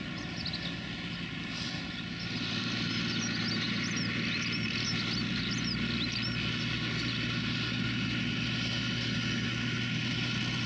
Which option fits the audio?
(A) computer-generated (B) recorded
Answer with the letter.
B